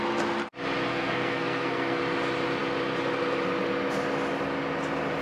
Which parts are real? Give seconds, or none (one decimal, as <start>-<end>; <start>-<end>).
0.0-0.9; 2.0-5.2